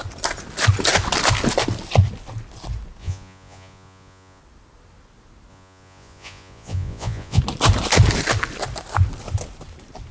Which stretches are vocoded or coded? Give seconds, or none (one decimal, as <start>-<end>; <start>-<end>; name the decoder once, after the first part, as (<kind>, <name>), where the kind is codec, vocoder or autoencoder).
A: 3.0-4.4 (vocoder, Vocos); 5.5-7.4